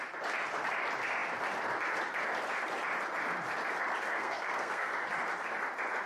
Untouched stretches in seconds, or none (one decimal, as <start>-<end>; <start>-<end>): 0.0-4.1; 4.9-6.1